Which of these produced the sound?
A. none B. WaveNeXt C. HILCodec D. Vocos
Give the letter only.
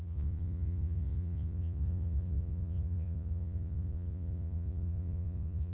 D